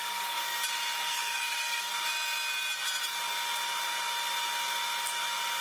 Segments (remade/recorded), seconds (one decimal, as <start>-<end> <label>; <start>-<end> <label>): 0.0-0.4 remade; 0.4-1.0 recorded; 1.0-1.9 remade; 1.9-5.6 recorded